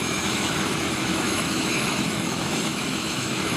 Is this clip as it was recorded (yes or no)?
no